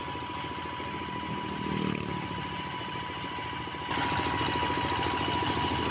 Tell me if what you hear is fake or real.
real